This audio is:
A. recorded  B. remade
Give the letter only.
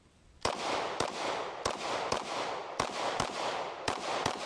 A